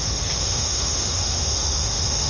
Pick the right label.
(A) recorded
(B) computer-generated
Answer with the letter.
B